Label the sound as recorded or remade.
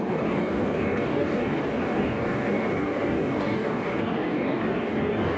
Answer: remade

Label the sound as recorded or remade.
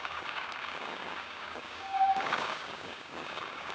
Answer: remade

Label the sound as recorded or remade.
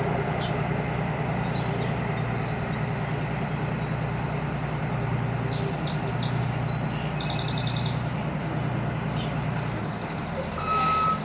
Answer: recorded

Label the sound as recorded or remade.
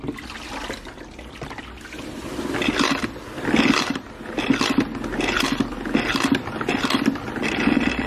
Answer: recorded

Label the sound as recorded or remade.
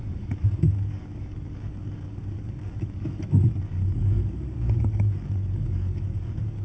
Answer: remade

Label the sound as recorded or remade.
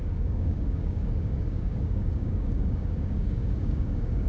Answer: remade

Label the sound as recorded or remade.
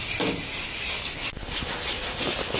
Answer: recorded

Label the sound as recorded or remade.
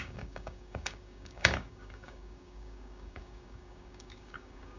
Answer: remade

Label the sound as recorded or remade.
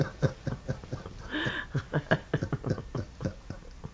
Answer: recorded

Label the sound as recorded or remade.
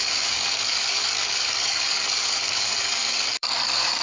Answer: remade